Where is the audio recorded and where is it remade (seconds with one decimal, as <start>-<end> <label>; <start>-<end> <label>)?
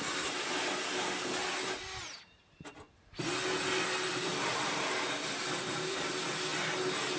0.0-2.0 recorded; 2.0-2.6 remade; 2.6-4.1 recorded; 4.1-6.0 remade; 6.0-7.2 recorded